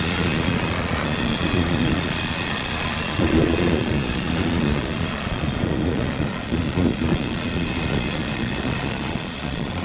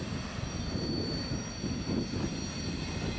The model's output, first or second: first